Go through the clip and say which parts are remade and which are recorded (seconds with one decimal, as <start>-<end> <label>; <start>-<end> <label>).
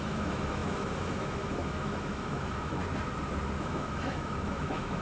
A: 0.0-2.8 remade; 2.8-3.6 recorded; 3.6-5.0 remade